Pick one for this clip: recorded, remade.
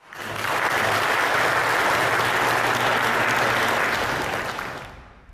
recorded